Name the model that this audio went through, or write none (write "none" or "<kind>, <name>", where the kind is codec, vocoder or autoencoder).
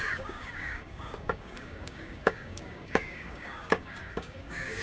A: codec, DAC